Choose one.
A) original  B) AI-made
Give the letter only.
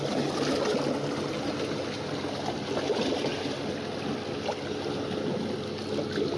A